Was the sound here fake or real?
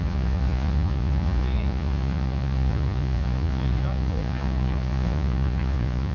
fake